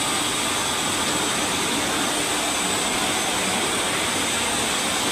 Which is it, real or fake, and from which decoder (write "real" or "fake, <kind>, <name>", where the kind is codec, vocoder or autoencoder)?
real